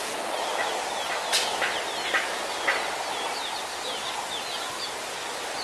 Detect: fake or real real